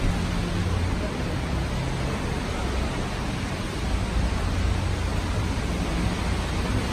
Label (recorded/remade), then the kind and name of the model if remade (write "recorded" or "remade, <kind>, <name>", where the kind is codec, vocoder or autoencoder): recorded